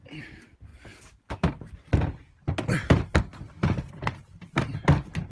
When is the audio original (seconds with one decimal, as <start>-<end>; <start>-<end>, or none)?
0.0-5.3